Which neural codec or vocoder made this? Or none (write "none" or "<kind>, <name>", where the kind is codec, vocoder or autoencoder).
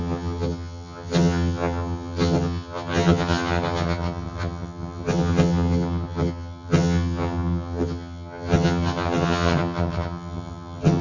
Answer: vocoder, HiFi-GAN